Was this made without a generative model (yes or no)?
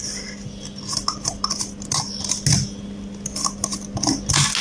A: yes